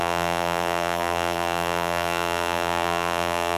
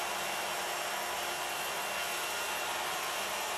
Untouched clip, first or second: second